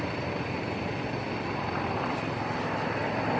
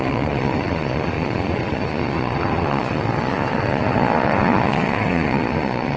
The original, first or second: first